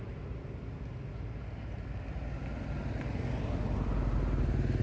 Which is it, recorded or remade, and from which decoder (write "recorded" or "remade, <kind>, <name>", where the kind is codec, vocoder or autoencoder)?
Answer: recorded